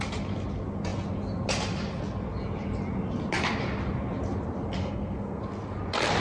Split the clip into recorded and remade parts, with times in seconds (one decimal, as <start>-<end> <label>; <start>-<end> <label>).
0.0-4.8 recorded; 4.8-5.4 remade; 5.4-6.2 recorded